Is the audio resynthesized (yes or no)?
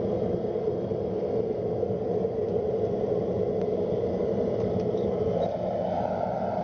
no